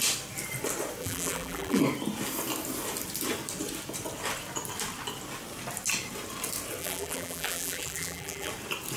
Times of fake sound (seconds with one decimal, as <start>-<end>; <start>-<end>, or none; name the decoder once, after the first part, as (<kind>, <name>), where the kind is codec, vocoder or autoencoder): 1.0-1.8 (vocoder, BigVGAN v2); 6.8-8.5